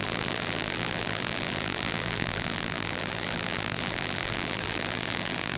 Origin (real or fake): fake